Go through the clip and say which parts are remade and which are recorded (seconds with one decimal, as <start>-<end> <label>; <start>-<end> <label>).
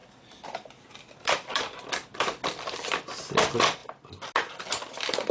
0.0-5.3 recorded